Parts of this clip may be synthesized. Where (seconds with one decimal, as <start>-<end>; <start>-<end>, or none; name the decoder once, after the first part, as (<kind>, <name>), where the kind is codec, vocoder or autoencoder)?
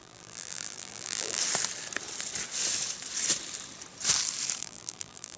0.0-1.4 (vocoder, BigVGAN v2); 4.6-5.4